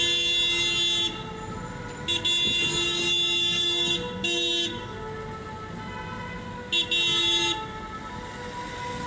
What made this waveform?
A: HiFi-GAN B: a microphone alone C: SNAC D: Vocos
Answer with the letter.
B